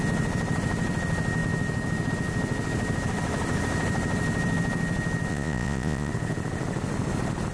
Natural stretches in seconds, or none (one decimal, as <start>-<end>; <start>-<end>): 0.0-5.3; 6.1-7.5